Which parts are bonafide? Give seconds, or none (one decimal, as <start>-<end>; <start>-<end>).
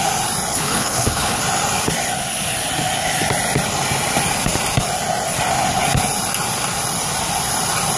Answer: 0.0-0.5; 1.4-8.0